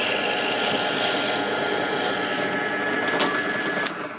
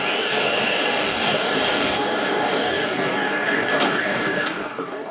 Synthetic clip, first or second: second